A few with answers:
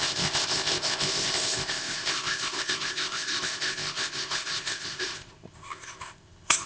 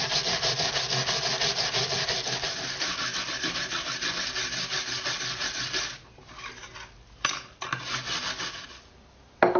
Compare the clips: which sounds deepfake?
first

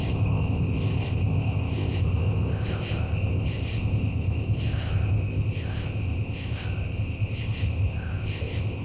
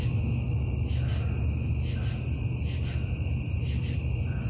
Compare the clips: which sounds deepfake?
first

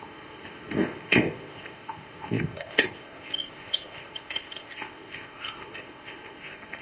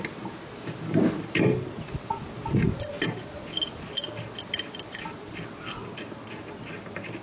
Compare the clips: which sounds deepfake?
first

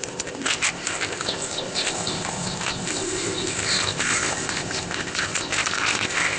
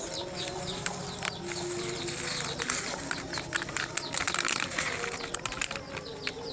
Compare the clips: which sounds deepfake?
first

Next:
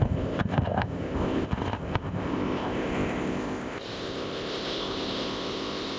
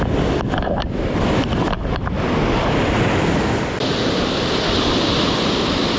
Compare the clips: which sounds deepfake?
first